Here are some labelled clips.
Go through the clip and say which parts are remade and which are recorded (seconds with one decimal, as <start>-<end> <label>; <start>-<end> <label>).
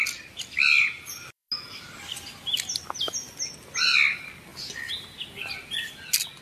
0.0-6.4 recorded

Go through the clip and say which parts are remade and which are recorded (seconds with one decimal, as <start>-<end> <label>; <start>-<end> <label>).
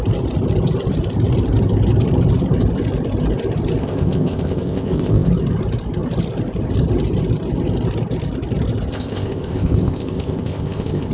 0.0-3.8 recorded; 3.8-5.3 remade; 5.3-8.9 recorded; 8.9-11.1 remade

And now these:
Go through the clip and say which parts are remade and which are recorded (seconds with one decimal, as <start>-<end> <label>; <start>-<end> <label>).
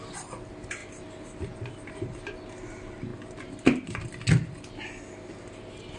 0.0-6.0 recorded